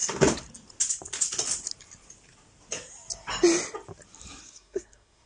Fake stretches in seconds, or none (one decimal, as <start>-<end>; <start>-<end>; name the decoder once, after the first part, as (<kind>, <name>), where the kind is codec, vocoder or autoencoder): 4.4-5.3 (codec, SNAC)